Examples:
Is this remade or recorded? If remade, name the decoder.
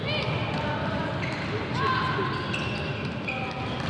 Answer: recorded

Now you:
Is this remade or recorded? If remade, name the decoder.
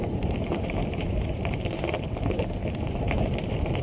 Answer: remade, vocoder, BigVGAN v2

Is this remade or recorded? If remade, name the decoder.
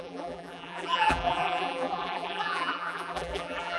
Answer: remade, vocoder, BigVGAN v2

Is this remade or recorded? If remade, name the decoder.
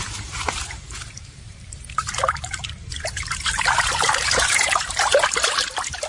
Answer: remade, vocoder, BigVGAN v2